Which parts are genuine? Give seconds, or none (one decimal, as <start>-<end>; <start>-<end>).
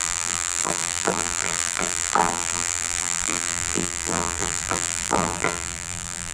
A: none